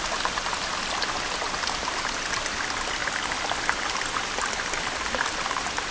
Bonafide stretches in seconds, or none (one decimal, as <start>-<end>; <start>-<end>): 0.0-5.9